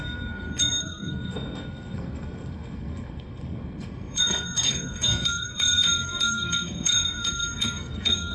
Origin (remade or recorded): remade